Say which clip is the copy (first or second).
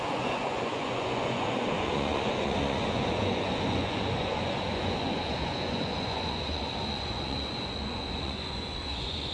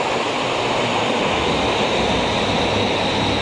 first